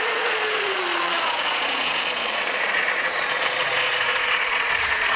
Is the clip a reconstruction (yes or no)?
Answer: yes